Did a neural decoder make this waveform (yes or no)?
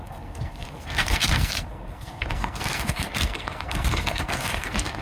yes